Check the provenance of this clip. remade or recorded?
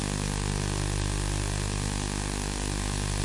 recorded